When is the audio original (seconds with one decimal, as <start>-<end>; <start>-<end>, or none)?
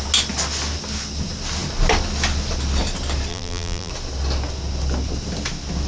0.0-3.3; 3.9-5.9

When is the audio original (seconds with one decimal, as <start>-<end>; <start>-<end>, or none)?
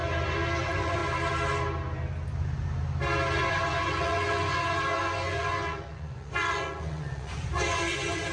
0.0-0.6; 1.0-3.5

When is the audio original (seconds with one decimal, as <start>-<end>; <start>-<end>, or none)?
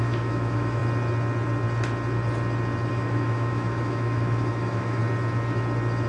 0.8-2.9; 5.0-6.1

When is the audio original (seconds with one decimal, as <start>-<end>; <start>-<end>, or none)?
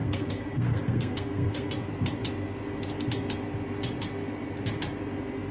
1.7-5.5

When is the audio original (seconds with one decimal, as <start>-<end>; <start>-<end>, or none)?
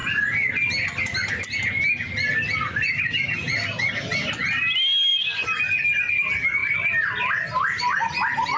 0.0-8.6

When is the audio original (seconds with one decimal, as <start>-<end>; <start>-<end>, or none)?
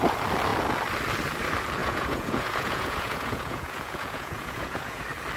0.0-1.8; 5.0-5.4